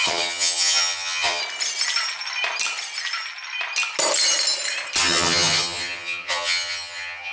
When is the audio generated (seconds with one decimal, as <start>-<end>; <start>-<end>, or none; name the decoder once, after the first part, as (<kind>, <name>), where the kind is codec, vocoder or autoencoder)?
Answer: 0.0-1.4 (vocoder, HiFi-GAN); 5.0-7.3